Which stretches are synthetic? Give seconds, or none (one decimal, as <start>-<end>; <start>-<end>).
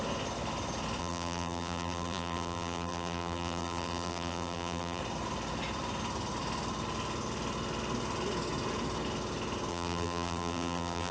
1.0-5.0; 9.7-11.1